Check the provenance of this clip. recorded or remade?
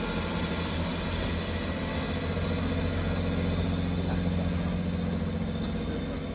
recorded